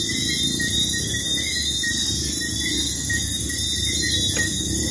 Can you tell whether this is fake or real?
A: real